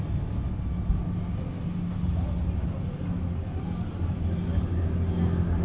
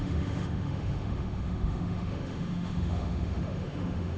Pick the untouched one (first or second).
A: first